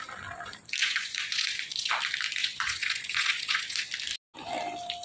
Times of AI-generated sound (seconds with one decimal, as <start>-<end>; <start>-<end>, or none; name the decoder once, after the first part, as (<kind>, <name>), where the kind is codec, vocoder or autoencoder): 0.8-1.9 (vocoder, Vocos); 2.4-3.8